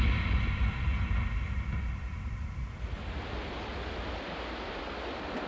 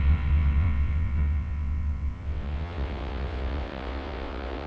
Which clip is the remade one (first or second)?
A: second